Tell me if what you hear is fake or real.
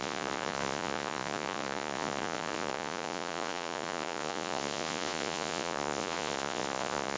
fake